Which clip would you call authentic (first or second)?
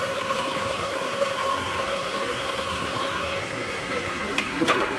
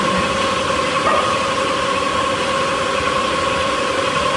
second